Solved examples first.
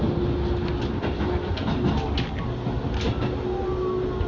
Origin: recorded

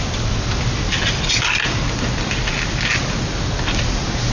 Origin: recorded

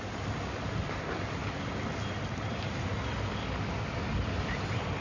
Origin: recorded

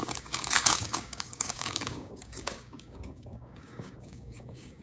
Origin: remade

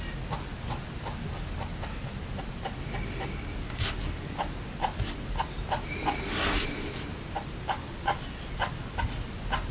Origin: recorded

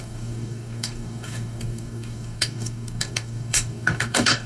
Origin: remade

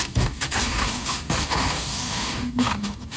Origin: remade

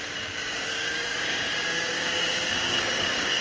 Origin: remade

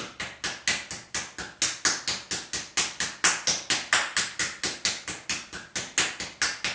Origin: recorded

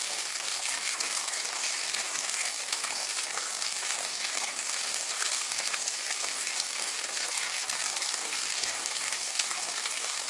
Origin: remade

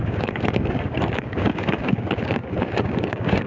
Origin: remade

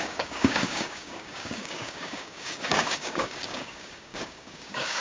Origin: remade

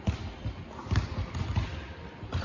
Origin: recorded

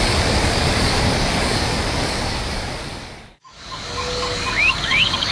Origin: remade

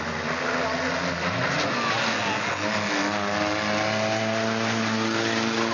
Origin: recorded